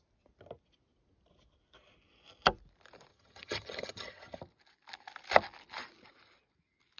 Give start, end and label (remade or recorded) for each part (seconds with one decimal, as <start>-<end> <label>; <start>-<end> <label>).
0.0-3.1 recorded; 3.1-4.4 remade; 4.4-7.0 recorded

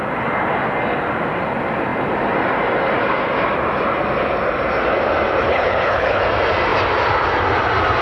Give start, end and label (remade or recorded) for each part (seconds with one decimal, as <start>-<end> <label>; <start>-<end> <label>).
0.0-5.4 recorded; 5.4-6.2 remade; 6.2-8.0 recorded